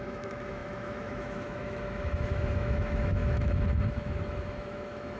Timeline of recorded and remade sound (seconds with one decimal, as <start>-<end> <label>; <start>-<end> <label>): 0.0-5.2 remade